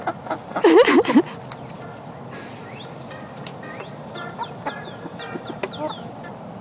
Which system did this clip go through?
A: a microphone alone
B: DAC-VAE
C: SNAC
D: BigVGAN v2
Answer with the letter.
A